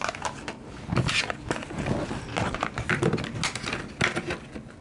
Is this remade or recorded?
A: recorded